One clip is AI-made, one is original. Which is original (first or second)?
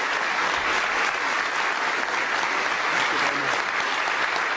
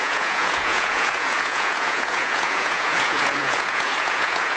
first